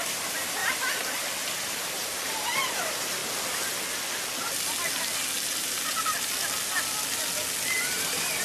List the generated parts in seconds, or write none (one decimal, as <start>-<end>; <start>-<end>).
0.0-3.2; 7.8-8.4